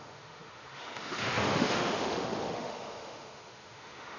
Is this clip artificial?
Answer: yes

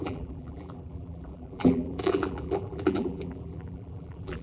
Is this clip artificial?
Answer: yes